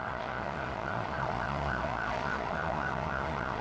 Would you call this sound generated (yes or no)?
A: yes